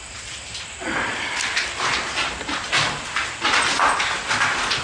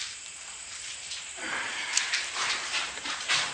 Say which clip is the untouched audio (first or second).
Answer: first